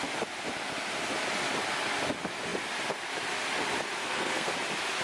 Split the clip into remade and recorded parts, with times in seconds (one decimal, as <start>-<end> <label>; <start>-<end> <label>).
0.0-4.0 recorded; 4.0-4.5 remade; 4.5-5.0 recorded